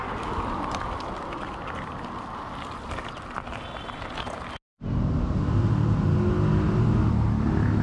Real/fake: real